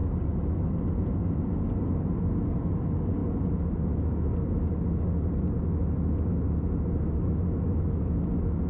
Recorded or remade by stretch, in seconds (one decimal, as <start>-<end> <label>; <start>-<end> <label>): 0.0-0.8 remade; 0.8-8.7 recorded